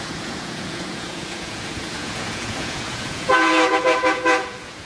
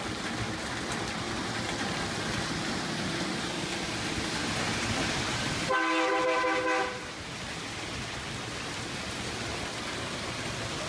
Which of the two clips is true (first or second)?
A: second